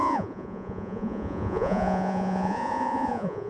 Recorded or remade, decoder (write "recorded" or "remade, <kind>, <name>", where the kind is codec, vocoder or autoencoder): remade, vocoder, Vocos